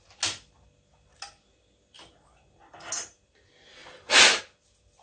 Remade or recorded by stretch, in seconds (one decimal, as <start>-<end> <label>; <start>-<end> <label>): 0.0-3.8 recorded; 3.8-4.4 remade; 4.4-5.0 recorded